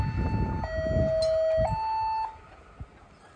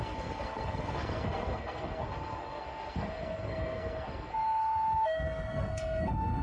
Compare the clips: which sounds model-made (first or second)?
second